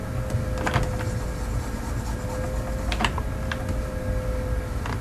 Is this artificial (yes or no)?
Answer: no